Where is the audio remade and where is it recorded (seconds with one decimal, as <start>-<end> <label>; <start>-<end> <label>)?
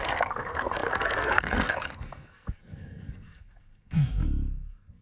0.0-5.0 remade